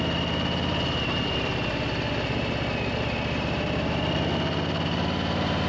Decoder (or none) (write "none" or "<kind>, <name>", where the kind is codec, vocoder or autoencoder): none